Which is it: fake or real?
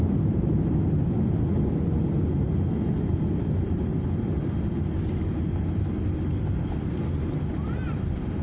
real